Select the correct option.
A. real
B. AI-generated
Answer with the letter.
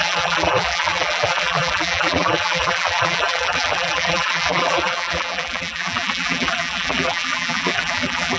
B